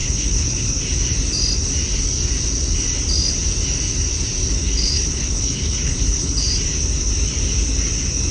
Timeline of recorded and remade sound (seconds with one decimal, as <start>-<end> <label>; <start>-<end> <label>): 0.0-0.7 remade; 0.7-4.6 recorded; 4.6-6.5 remade; 6.5-8.3 recorded